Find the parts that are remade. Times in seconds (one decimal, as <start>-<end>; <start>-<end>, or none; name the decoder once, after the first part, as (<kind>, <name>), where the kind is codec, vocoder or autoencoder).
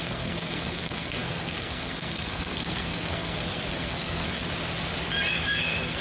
0.0-4.4 (codec, SNAC); 5.3-6.0